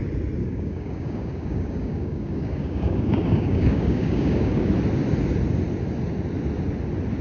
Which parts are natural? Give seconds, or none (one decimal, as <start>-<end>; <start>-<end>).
0.0-0.4; 4.7-7.2